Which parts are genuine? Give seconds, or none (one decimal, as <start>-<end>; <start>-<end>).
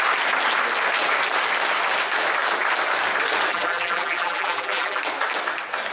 0.0-3.5; 5.0-5.9